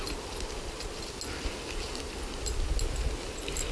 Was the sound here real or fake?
real